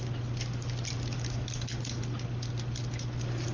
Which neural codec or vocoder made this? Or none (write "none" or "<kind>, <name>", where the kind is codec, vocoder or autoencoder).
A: none